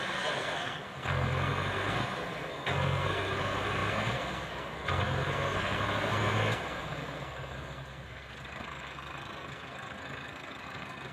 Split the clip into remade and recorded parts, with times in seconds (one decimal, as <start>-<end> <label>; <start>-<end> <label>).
0.0-11.1 remade